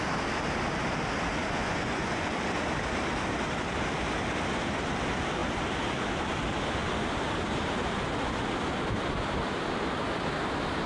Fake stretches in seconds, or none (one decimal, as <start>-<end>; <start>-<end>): 1.4-2.3